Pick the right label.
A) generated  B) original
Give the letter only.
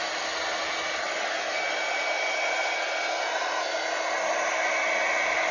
B